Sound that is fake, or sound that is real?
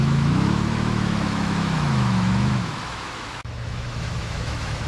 fake